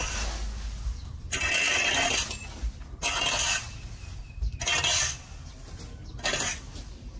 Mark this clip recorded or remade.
recorded